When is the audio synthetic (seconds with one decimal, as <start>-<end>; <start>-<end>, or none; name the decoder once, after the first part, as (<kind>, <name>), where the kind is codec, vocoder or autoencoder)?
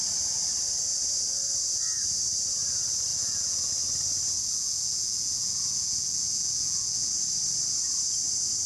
3.1-3.7 (vocoder, Vocos); 4.4-7.1